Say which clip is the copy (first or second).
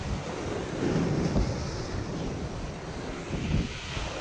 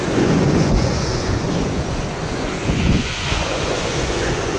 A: second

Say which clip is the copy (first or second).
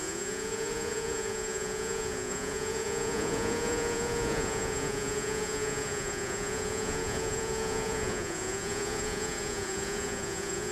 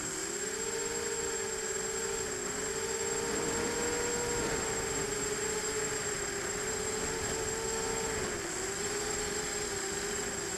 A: first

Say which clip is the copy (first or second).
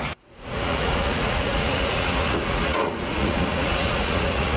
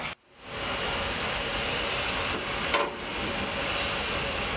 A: first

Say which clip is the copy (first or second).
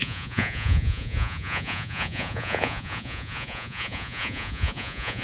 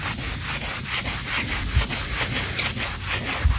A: first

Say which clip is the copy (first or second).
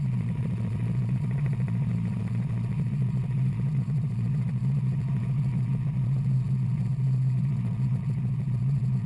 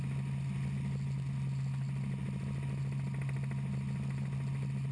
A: first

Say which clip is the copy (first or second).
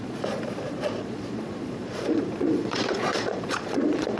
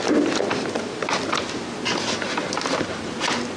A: first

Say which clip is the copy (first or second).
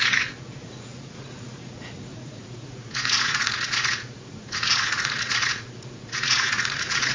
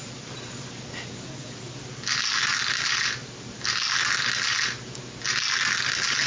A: first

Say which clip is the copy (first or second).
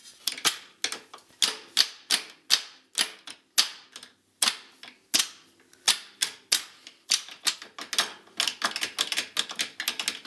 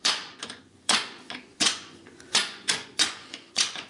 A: second